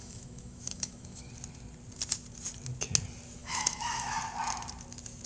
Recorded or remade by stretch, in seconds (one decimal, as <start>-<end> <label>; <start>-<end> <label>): 0.0-1.3 remade; 1.3-3.4 recorded; 3.4-4.2 remade; 4.2-5.3 recorded

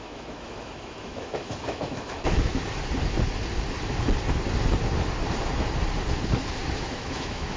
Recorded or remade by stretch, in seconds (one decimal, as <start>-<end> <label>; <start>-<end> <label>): 0.0-2.6 remade; 2.6-6.7 recorded; 6.7-7.6 remade

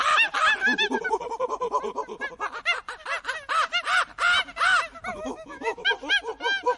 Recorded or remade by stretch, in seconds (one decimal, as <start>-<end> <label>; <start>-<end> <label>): 0.0-5.1 recorded; 5.1-5.9 remade; 5.9-6.8 recorded